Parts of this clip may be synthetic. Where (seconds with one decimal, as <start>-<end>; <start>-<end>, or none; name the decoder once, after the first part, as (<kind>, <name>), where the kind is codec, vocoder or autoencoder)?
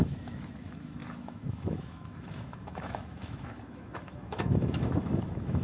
0.0-5.6 (autoencoder, DAC-VAE)